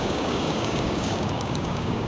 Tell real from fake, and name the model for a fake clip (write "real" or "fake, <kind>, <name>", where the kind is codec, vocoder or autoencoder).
fake, codec, DAC